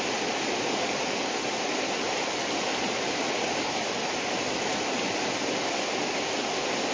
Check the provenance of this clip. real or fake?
real